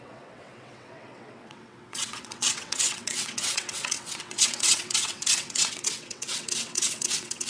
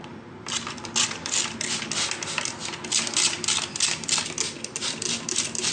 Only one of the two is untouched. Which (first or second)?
second